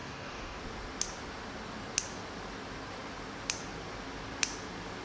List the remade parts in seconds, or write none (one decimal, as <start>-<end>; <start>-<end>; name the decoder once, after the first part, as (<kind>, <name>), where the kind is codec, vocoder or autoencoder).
0.0-0.6 (codec, DAC)